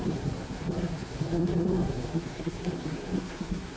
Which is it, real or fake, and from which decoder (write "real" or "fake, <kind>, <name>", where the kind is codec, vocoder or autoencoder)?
fake, codec, SNAC